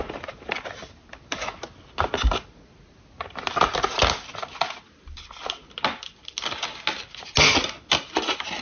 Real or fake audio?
real